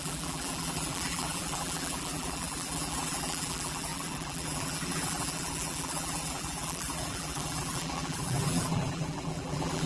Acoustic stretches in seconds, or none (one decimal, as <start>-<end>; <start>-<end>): none